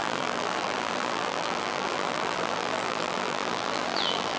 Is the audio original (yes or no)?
no